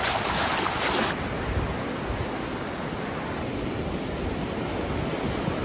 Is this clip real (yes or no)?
yes